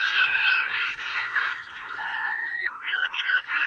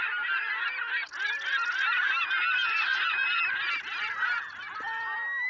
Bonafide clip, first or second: second